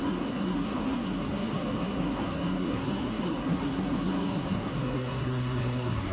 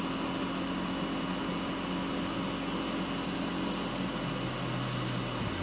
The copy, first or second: first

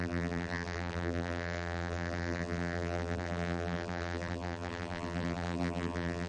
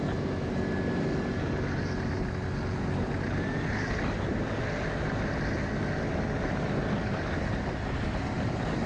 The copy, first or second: first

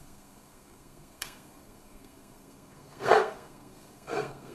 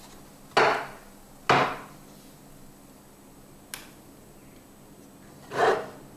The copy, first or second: first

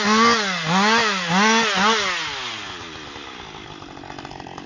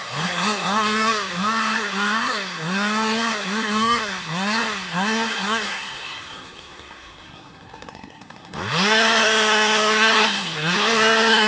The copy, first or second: second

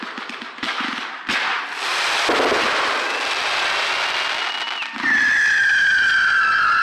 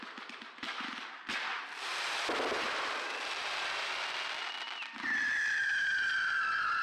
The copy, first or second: second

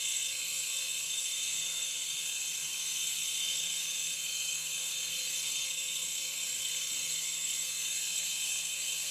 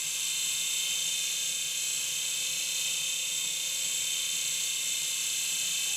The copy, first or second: first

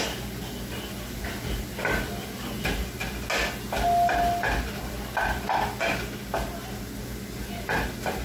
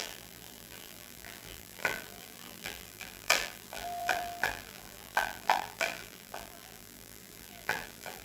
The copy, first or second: second